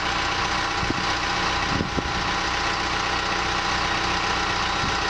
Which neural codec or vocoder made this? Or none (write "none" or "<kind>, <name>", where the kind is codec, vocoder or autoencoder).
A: none